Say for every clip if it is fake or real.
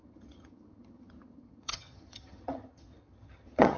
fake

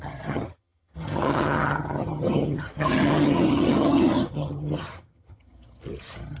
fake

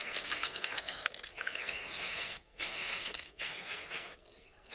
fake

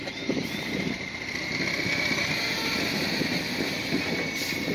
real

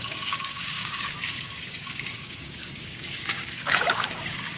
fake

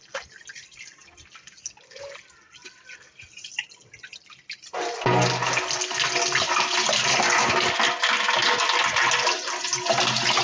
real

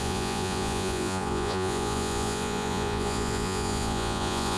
fake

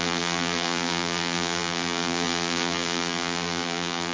fake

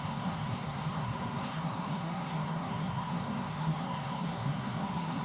fake